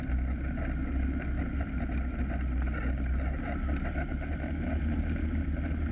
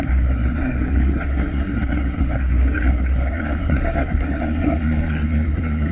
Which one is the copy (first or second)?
second